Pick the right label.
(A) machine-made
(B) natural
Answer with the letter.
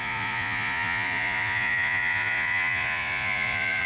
A